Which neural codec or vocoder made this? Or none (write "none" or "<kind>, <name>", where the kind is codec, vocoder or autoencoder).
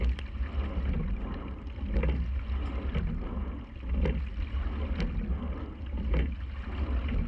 none